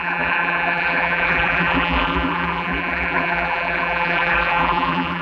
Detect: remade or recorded remade